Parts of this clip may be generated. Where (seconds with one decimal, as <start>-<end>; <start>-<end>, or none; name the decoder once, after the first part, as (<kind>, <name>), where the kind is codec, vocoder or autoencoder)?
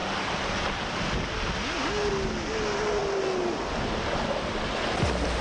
none